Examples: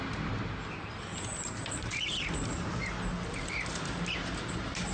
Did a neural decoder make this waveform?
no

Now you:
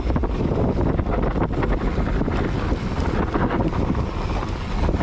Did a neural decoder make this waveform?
no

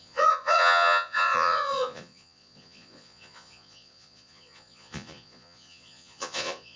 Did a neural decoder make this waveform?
yes